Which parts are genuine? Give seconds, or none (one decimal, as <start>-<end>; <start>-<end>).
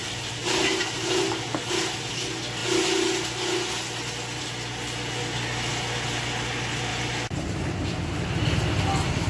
1.6-6.9; 8.3-9.3